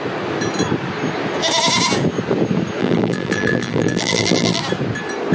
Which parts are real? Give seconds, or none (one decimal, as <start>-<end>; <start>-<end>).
0.0-2.8; 4.6-5.3